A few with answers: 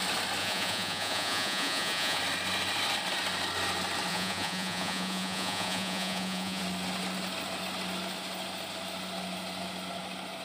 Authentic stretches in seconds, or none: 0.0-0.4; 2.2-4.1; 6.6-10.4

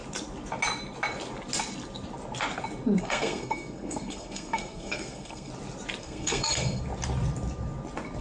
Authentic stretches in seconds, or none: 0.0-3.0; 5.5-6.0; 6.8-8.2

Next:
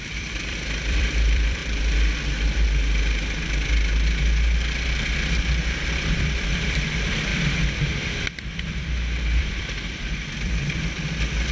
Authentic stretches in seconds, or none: 1.6-5.9; 7.3-9.4